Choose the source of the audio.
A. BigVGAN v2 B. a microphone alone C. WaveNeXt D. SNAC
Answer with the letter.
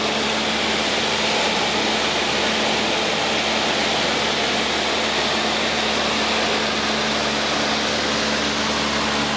B